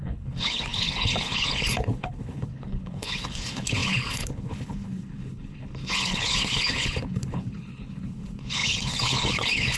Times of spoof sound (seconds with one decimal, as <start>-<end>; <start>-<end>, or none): 0.0-9.8